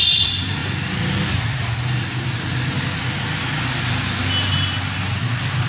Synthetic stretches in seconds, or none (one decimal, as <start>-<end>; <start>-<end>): none